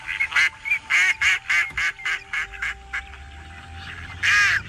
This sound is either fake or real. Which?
real